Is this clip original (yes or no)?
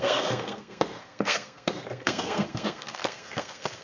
no